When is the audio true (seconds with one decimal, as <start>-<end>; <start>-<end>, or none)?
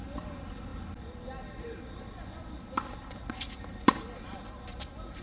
0.0-5.2